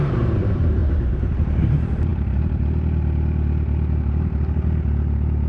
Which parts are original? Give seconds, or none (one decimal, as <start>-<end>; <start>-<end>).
2.1-5.5